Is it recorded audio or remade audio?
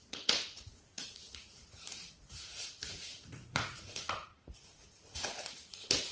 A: remade